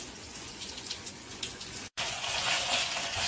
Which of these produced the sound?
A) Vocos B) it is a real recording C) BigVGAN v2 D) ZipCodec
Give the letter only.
A